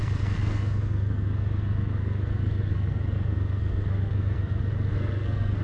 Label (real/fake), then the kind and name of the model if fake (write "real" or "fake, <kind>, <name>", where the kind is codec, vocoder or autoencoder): fake, codec, SNAC